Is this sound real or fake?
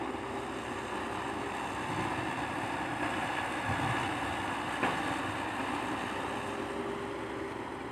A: real